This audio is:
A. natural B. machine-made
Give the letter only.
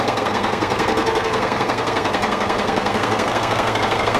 B